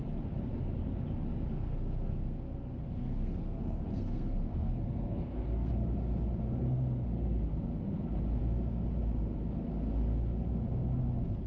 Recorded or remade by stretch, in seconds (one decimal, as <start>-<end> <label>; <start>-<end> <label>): 0.0-1.5 recorded; 1.5-5.7 remade; 5.7-6.6 recorded; 6.6-7.5 remade; 7.5-11.5 recorded